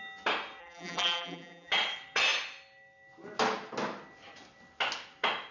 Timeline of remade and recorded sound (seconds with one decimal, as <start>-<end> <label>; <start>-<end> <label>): 0.0-0.6 recorded; 0.6-1.7 remade; 1.7-5.5 recorded